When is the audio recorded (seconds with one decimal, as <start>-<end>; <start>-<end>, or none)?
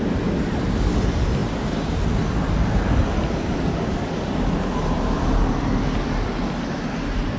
0.0-7.4